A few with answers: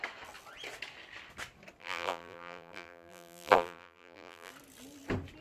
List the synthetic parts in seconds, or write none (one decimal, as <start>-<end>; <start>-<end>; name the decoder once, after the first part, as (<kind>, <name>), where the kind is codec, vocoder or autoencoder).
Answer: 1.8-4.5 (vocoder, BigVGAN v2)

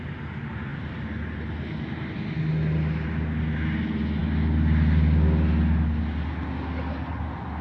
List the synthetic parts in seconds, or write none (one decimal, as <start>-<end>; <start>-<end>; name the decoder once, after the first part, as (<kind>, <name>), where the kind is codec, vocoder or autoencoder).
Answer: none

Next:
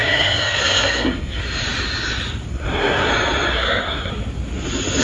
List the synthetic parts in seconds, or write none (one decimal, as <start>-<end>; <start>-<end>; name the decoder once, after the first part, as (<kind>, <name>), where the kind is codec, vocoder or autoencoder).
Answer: 0.0-1.4 (codec, SNAC); 2.5-3.1; 3.5-4.1